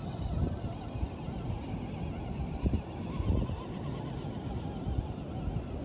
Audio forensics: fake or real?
real